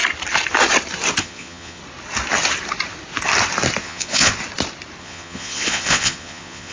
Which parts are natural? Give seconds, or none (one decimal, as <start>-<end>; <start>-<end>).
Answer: 0.0-1.2; 1.8-3.8; 4.3-5.0